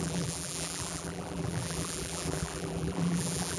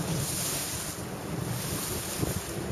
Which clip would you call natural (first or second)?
second